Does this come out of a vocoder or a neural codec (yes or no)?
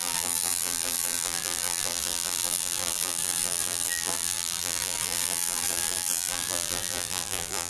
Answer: yes